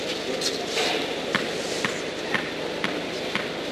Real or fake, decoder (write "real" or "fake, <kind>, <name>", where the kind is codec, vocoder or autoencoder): real